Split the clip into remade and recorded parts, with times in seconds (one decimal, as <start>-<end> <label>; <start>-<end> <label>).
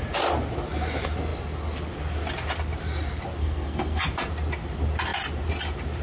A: 0.0-3.4 recorded; 3.4-4.0 remade; 4.0-6.0 recorded